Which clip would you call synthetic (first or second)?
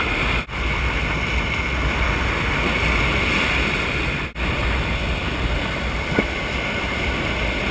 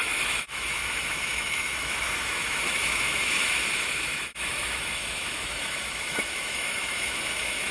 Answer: second